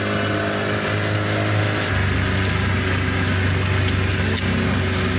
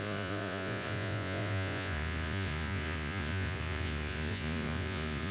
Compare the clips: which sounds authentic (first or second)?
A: first